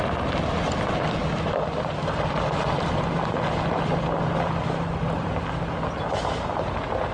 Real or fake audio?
real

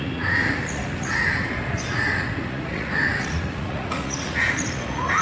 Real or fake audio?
fake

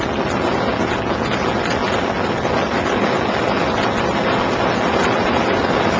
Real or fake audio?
real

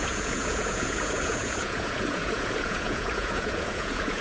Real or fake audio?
fake